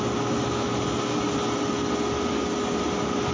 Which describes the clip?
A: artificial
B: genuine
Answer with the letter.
B